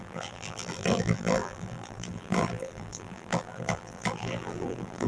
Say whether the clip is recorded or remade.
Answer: remade